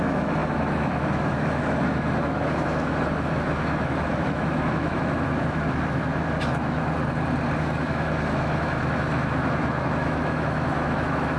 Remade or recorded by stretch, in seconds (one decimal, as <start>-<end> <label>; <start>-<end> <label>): 0.0-7.0 remade; 7.0-7.6 recorded; 7.6-11.4 remade